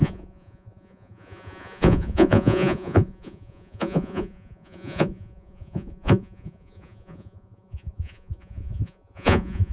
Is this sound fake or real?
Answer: fake